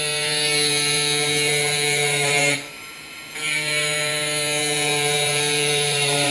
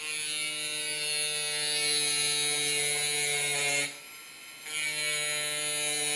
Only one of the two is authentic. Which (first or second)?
second